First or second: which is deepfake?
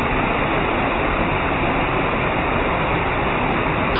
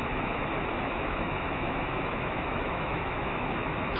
second